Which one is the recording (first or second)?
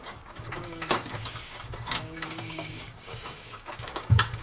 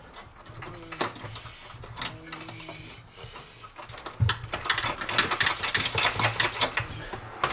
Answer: second